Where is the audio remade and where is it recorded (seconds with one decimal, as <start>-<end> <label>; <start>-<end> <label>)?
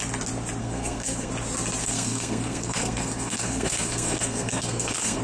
0.0-0.6 recorded; 0.6-1.3 remade; 1.3-1.8 recorded; 1.8-5.2 remade